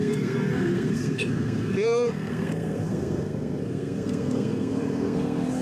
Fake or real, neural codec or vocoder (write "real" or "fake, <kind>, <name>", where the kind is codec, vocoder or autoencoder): fake, codec, SNAC